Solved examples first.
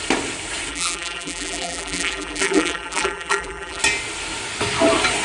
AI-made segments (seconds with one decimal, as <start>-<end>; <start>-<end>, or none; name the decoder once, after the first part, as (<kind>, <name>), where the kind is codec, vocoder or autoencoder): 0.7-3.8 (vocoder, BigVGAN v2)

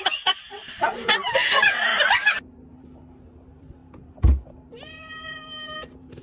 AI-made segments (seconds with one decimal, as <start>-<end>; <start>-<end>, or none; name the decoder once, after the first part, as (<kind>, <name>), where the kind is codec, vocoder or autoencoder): 0.0-1.9 (vocoder, BigVGAN v2); 2.7-6.2

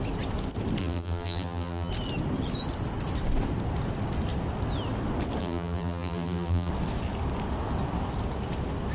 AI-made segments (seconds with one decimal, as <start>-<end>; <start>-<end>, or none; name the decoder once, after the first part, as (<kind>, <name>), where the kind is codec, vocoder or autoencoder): 0.8-1.9 (vocoder, BigVGAN v2); 5.4-6.7

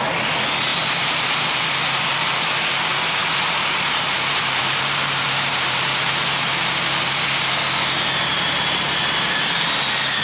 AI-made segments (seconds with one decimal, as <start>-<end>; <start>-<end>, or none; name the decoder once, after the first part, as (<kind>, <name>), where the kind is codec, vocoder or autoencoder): 0.7-1.6 (vocoder, BigVGAN v2); 3.2-6.7; 8.3-9.0

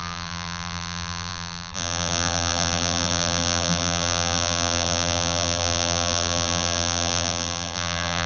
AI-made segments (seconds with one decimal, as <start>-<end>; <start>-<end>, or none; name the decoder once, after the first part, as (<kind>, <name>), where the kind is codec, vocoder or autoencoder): 0.0-8.3 (vocoder, BigVGAN v2)

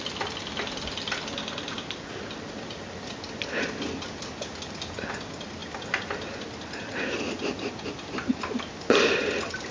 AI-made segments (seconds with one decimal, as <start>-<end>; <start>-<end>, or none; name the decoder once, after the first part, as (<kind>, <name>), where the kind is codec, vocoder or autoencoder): 5.6-6.8 (vocoder, BigVGAN v2)

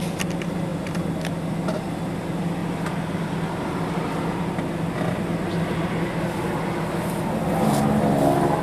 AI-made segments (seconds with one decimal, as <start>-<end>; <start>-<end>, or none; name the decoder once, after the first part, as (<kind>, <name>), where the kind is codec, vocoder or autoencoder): none

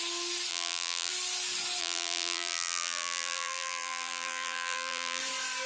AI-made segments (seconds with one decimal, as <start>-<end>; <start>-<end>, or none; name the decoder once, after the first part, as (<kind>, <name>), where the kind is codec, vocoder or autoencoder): 0.5-1.1 (vocoder, BigVGAN v2); 1.8-5.2